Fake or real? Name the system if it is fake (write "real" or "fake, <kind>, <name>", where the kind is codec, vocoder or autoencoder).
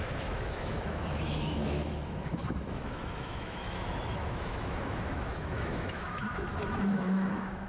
fake, autoencoder, DAC-VAE